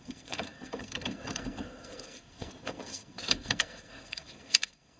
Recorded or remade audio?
remade